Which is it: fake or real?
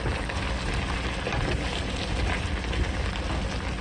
real